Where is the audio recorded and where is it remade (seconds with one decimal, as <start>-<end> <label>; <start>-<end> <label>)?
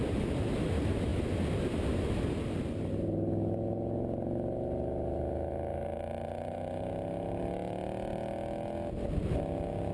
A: 0.0-5.7 recorded; 5.7-7.4 remade; 7.4-9.9 recorded